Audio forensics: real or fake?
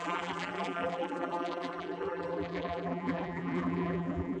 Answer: fake